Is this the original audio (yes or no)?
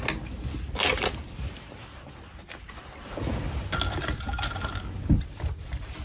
yes